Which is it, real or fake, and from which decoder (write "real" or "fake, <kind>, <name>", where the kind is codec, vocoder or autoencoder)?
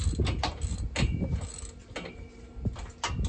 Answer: real